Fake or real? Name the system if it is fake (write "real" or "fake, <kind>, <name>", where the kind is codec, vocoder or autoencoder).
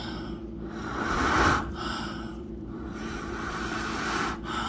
fake, vocoder, BigVGAN v2